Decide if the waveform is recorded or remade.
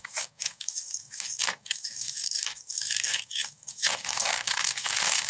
remade